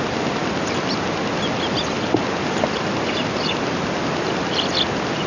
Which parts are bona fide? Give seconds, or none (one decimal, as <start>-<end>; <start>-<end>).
0.0-5.3